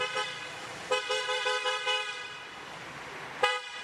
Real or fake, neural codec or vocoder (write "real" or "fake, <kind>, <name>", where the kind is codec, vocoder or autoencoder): fake, vocoder, BigVGAN v2